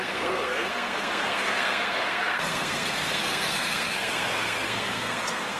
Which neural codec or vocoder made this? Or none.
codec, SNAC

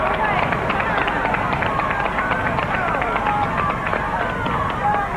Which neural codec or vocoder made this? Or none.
none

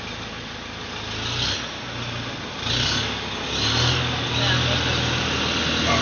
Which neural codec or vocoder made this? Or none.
none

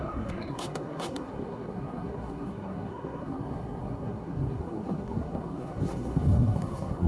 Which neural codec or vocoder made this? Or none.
codec, SNAC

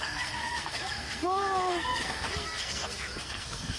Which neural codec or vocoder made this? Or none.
codec, SNAC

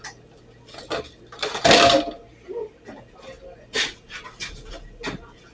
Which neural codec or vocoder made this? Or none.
none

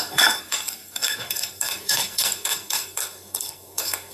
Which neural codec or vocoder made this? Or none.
codec, SNAC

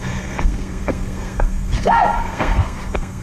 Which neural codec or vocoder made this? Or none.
codec, SNAC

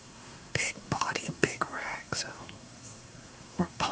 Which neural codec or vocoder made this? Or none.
codec, SNAC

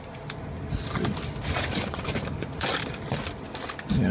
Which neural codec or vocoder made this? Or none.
none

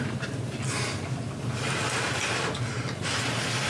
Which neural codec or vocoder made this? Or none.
none